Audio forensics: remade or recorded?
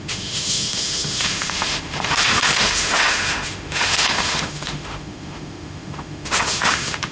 remade